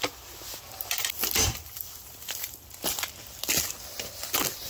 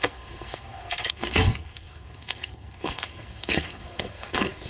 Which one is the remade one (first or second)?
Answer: second